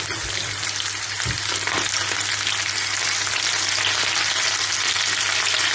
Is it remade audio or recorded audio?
recorded